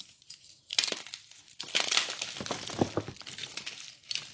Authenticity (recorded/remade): recorded